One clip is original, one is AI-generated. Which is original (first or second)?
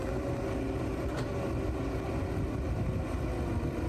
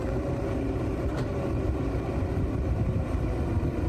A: first